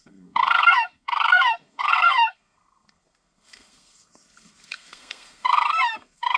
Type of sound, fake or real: fake